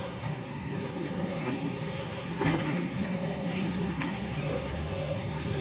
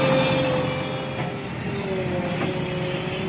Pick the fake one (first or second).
first